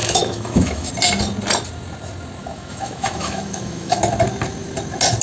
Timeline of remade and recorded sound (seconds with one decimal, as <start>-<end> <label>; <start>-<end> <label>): 0.0-0.9 remade; 0.9-2.4 recorded; 2.4-4.0 remade; 4.0-5.2 recorded